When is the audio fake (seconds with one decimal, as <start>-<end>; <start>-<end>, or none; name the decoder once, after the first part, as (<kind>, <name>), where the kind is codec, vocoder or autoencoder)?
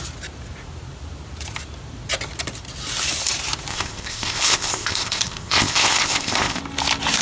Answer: 3.7-6.6 (codec, ZipCodec)